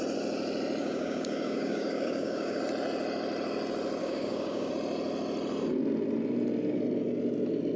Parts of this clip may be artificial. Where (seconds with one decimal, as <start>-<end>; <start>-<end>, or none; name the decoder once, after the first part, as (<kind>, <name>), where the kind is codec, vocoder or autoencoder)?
0.8-2.6 (codec, DAC); 4.0-4.7